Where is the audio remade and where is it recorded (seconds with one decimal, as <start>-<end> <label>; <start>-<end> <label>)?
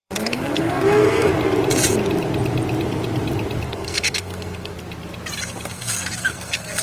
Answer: 0.0-1.3 remade; 1.3-3.7 recorded; 3.7-4.7 remade; 4.7-5.7 recorded; 5.7-6.8 remade